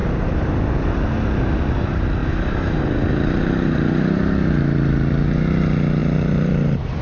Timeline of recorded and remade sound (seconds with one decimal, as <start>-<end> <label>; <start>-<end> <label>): 0.0-0.5 remade; 0.5-2.2 recorded; 2.2-4.2 remade; 4.2-6.0 recorded; 6.0-7.0 remade